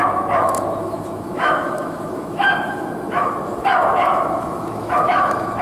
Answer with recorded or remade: remade